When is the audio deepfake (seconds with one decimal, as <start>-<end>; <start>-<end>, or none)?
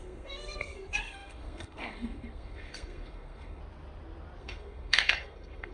0.0-3.6; 4.4-5.7